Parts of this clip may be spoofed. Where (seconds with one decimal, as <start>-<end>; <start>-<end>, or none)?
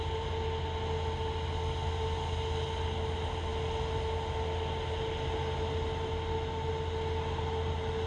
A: none